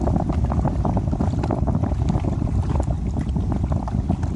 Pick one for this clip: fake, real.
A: real